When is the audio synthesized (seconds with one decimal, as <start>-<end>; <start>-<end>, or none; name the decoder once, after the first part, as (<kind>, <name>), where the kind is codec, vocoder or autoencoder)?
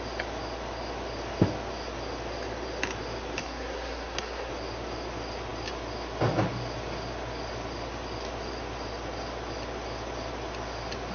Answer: 3.4-4.5 (codec, SNAC)